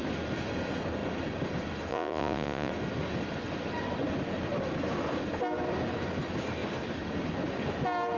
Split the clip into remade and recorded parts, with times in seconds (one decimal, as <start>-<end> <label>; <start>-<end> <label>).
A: 0.0-1.9 recorded; 1.9-2.7 remade; 2.7-8.2 recorded